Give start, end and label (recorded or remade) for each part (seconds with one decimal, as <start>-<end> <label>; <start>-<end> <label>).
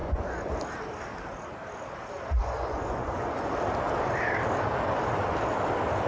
0.0-0.5 remade; 0.5-2.4 recorded; 2.4-3.5 remade; 3.5-6.1 recorded